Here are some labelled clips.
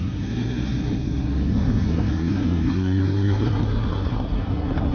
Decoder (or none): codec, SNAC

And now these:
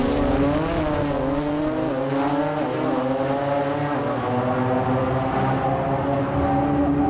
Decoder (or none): none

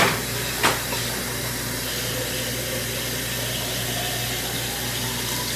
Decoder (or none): none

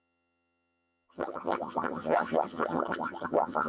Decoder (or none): vocoder, HiFi-GAN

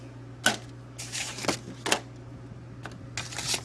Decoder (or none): none